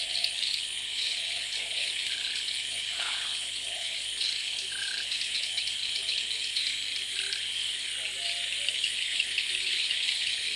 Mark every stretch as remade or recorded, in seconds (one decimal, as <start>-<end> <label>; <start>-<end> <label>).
0.0-6.6 remade; 6.6-7.4 recorded; 7.4-7.9 remade; 7.9-8.7 recorded; 8.7-10.6 remade